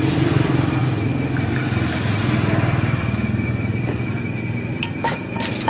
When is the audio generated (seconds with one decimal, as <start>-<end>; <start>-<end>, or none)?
none